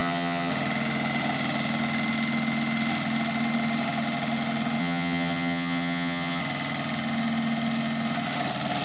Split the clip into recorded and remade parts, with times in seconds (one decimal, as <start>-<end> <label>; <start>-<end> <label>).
0.0-0.5 remade; 0.5-4.8 recorded; 4.8-6.4 remade; 6.4-8.8 recorded